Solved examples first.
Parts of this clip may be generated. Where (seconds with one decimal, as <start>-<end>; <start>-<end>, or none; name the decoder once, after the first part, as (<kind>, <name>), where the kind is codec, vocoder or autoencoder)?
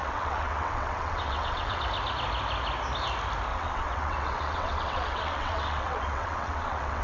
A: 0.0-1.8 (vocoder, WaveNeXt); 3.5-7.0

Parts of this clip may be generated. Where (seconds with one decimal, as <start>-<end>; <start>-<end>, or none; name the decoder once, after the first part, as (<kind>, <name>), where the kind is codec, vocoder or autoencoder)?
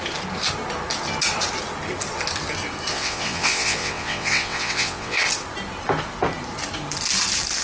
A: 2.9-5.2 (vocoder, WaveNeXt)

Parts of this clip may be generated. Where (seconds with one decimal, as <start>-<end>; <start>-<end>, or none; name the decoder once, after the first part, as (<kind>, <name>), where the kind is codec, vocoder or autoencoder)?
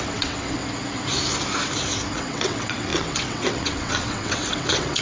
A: 0.0-0.6 (vocoder, WaveNeXt); 2.2-5.0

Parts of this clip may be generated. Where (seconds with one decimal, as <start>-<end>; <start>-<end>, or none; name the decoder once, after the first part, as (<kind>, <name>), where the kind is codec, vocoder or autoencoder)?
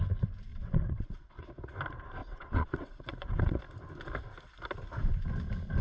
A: 0.5-1.5 (vocoder, WaveNeXt); 2.2-3.6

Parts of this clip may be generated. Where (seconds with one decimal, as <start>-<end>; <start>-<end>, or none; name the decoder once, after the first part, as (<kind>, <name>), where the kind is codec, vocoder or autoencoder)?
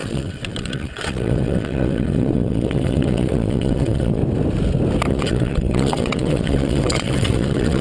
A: 0.0-4.2 (vocoder, WaveNeXt); 5.1-7.8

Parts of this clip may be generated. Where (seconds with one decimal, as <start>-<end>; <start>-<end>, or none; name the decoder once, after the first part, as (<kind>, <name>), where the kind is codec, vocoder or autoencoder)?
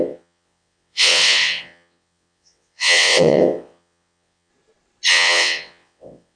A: 0.0-4.5 (vocoder, WaveNeXt); 5.1-6.4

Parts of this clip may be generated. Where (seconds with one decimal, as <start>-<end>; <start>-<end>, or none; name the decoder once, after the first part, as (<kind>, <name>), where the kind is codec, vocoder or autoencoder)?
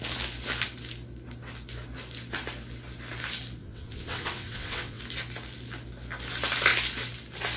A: 3.6-5.0 (vocoder, WaveNeXt)